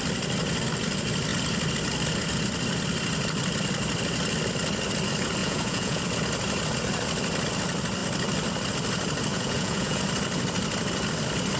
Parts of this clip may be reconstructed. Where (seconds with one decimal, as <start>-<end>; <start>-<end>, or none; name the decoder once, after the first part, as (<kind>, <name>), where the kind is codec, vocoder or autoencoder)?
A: 5.4-6.0 (vocoder, Vocos); 9.3-10.0